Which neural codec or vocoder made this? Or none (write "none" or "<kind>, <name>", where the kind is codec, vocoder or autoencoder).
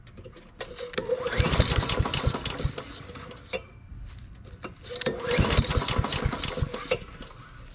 none